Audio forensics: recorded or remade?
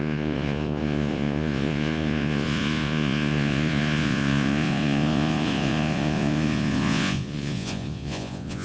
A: remade